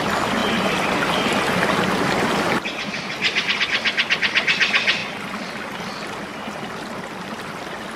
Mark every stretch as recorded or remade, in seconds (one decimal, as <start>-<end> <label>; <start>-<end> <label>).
0.0-8.0 recorded